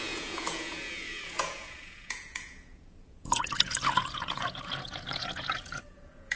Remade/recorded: remade